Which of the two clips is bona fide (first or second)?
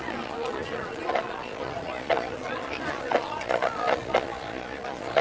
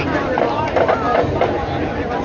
second